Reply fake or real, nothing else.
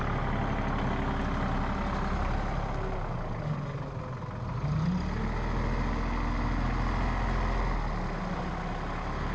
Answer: real